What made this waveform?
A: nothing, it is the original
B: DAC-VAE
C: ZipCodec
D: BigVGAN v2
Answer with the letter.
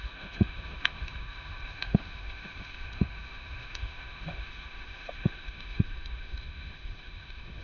B